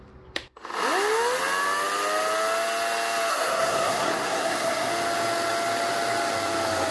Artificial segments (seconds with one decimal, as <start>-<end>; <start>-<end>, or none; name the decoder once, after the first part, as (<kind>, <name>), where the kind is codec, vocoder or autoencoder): 3.3-4.9 (codec, SNAC)